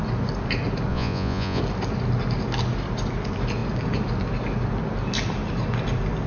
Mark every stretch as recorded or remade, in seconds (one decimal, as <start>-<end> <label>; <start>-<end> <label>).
0.0-0.9 recorded; 0.9-1.6 remade; 1.6-6.3 recorded